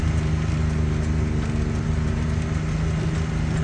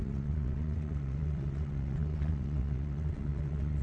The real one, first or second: first